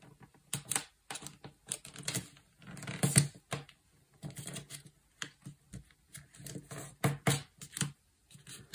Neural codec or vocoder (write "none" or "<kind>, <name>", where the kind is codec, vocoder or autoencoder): none